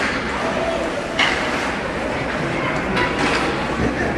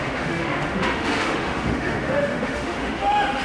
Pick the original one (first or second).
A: first